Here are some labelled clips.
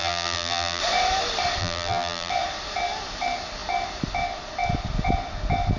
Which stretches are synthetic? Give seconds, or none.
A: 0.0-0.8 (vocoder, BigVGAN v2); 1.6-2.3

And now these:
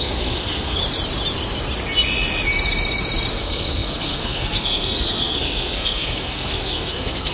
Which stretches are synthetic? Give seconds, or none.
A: 0.0-0.8 (codec, SNAC); 3.3-7.3

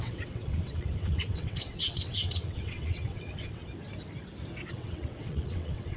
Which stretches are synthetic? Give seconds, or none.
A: 0.0-3.6 (vocoder, WaveNeXt); 4.7-6.0

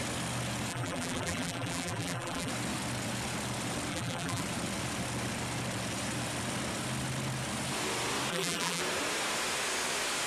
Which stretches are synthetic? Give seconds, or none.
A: 0.7-2.5 (vocoder, BigVGAN v2); 3.9-4.4; 8.3-8.8

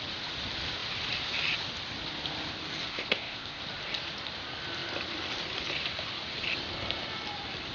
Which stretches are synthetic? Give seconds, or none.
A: 2.9-3.6 (codec, ZipCodec)

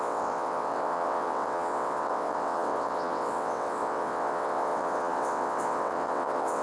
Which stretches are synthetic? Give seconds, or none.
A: 0.0-6.6 (vocoder, WaveNeXt)

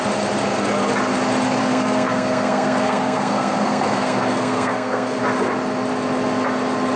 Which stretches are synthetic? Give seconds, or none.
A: 1.6-5.2 (codec, SNAC)

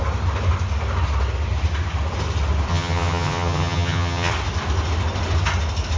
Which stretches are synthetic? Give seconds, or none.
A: 2.7-4.3 (vocoder, HiFi-GAN)